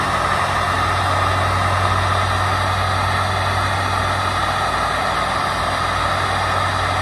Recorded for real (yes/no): yes